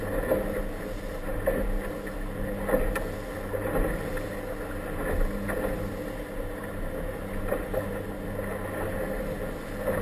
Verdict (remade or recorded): recorded